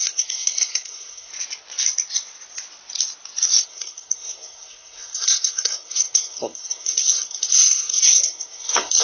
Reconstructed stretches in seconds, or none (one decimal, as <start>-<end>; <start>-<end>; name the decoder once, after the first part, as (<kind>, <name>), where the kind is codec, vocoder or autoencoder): 0.0-1.3 (codec, SNAC); 3.6-9.0